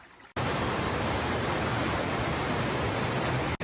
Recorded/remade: recorded